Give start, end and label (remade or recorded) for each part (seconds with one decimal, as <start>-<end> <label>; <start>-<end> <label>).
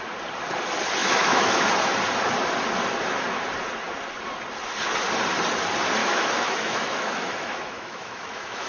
0.0-1.0 recorded; 1.0-1.7 remade; 1.7-6.0 recorded; 6.0-8.7 remade